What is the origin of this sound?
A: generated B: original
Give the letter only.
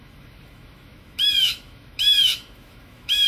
A